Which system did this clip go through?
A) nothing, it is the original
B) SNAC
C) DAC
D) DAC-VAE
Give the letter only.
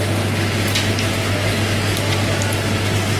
A